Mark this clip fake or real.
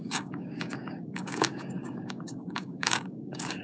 fake